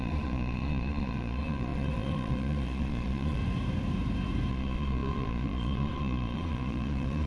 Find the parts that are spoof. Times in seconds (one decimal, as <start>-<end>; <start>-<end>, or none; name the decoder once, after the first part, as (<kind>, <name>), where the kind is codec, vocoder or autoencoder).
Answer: 0.0-3.4 (vocoder, Vocos); 4.5-7.3